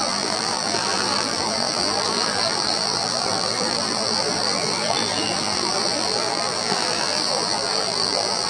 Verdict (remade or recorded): remade